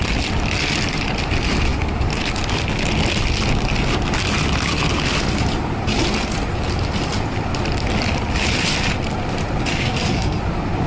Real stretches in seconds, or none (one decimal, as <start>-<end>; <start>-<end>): 0.0-9.7; 10.4-10.9